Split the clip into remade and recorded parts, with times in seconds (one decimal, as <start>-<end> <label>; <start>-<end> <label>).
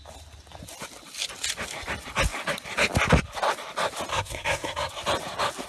0.0-4.1 recorded; 4.1-4.9 remade; 4.9-5.7 recorded